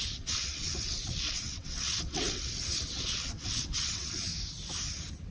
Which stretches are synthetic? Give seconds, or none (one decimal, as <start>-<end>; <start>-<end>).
0.0-4.3